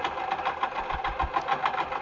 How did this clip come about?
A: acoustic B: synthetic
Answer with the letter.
A